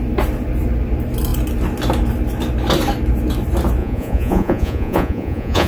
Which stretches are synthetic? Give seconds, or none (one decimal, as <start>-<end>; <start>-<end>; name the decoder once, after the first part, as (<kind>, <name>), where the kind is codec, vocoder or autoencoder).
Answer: 3.8-5.7 (vocoder, Vocos)